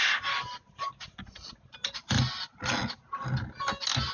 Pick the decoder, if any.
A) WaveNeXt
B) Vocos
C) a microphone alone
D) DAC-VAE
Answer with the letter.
C